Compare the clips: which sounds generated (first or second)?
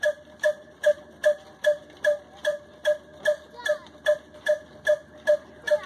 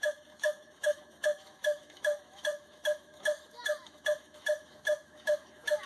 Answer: second